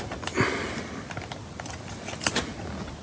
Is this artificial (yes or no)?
no